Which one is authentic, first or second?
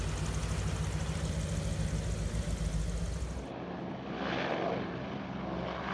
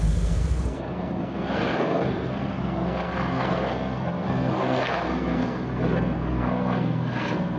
first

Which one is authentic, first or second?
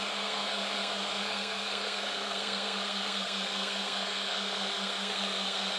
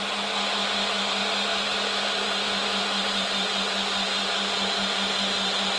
second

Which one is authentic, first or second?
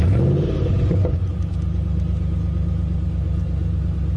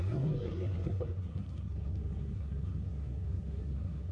first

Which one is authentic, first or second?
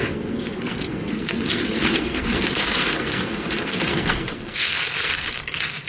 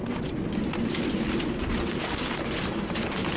second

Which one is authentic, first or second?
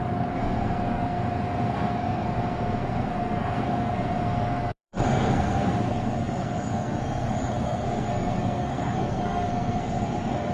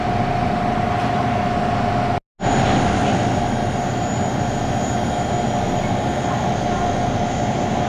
second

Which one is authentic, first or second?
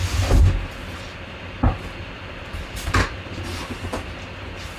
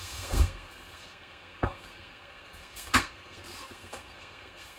first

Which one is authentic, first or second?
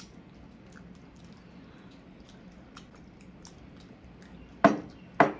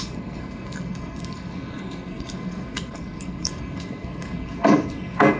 first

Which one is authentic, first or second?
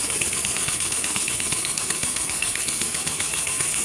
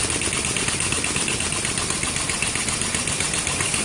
second